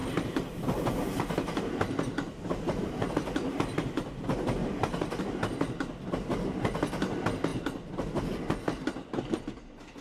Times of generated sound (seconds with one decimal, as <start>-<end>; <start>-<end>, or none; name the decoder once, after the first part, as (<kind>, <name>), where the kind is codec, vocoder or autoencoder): 0.0-3.1 (vocoder, BigVGAN v2); 4.6-5.2